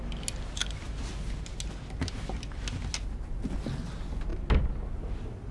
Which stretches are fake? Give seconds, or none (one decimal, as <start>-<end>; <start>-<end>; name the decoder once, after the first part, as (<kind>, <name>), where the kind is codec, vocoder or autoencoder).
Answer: none